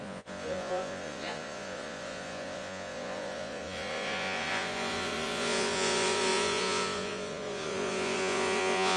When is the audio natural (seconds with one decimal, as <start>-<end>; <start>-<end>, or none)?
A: none